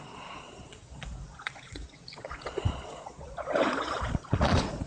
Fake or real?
fake